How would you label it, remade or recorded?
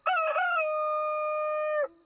recorded